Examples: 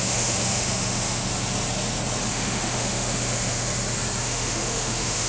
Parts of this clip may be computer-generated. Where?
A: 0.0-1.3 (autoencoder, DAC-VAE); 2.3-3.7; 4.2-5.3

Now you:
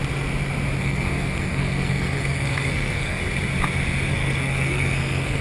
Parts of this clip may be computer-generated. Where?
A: 0.8-3.2 (codec, SNAC); 4.1-5.4

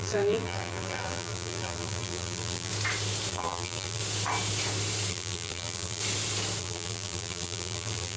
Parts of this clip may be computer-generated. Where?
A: 0.0-2.7 (vocoder, BigVGAN v2); 3.3-4.0; 5.1-6.0; 6.6-8.2

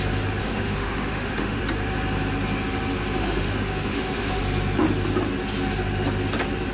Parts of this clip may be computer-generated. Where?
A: 0.4-1.6 (autoencoder, DAC-VAE); 3.2-4.4